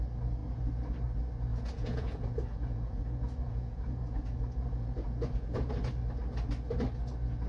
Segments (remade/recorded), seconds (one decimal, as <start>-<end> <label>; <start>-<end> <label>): 0.0-1.5 recorded; 1.5-5.7 remade; 5.7-7.5 recorded